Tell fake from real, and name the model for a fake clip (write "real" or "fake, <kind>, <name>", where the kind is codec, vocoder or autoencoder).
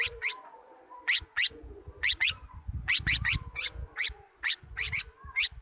fake, vocoder, Vocos